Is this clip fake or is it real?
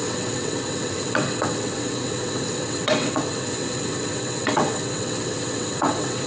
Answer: fake